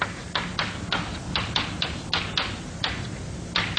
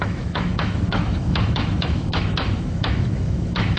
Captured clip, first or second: first